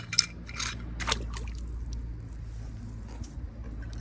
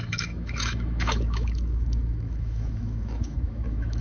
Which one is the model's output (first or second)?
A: second